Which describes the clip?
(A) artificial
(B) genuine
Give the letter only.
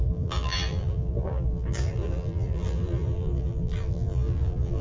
A